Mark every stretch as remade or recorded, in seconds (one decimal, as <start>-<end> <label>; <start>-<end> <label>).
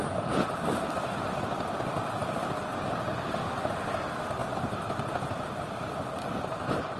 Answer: 0.0-2.2 remade; 2.2-3.1 recorded; 3.1-7.0 remade